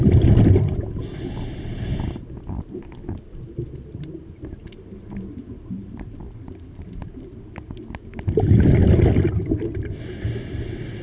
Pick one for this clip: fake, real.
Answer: real